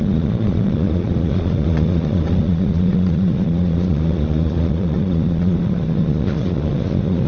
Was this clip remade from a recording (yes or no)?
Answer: yes